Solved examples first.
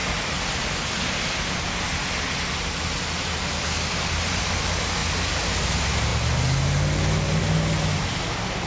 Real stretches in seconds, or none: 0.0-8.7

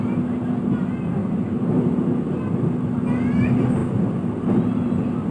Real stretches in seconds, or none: 0.0-3.8; 4.4-5.3

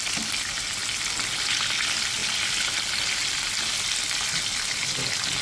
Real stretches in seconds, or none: 0.0-5.4

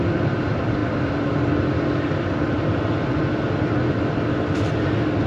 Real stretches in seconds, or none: 0.0-5.3

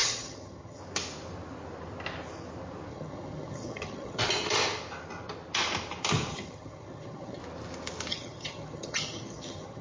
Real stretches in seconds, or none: 0.8-2.9; 4.2-6.3; 7.4-8.1